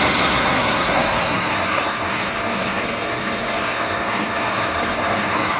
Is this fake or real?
fake